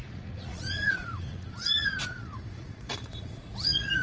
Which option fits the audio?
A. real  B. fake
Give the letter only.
B